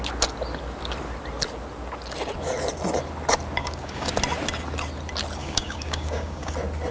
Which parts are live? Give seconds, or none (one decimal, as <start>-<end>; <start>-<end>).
0.0-3.6; 4.1-5.4; 6.5-6.9